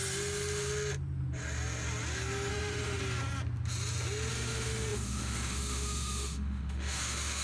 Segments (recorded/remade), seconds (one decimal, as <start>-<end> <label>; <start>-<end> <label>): 0.0-2.5 recorded; 2.5-3.0 remade; 3.0-4.3 recorded; 4.3-7.4 remade

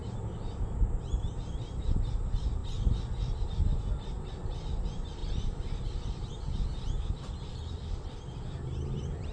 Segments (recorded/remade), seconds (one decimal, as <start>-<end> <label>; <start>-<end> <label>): 0.0-2.0 recorded; 2.0-2.6 remade; 2.6-4.8 recorded; 4.8-5.2 remade; 5.2-7.1 recorded; 7.1-9.3 remade

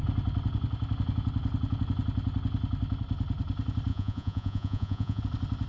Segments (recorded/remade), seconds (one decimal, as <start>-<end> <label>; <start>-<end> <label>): 0.0-3.9 recorded; 3.9-5.2 remade; 5.2-5.7 recorded

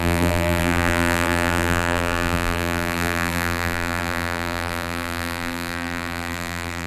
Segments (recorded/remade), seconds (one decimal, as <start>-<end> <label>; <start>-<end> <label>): 0.0-6.9 remade

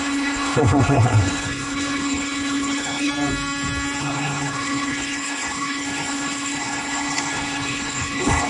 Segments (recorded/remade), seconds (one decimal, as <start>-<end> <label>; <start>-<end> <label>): 0.0-3.1 remade; 3.1-4.0 recorded; 4.0-8.5 remade